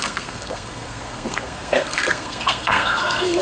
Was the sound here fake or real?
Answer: fake